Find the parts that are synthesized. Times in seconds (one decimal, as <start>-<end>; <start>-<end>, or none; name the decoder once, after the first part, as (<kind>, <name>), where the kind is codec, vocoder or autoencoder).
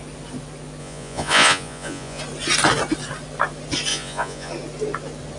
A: 0.8-2.2 (vocoder, Vocos); 3.9-4.5